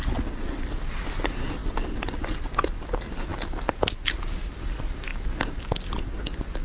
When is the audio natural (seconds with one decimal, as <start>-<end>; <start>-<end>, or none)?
0.0-6.6